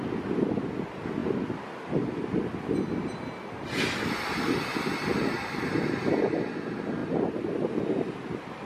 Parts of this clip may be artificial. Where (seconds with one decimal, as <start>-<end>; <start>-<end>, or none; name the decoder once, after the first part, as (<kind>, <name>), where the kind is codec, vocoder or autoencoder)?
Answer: none